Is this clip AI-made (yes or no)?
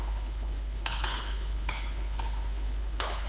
yes